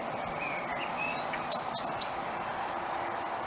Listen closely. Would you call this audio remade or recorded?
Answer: remade